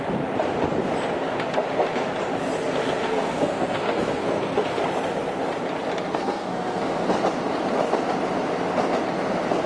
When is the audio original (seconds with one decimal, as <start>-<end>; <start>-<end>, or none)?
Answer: 0.0-3.0; 4.8-6.1; 6.8-9.7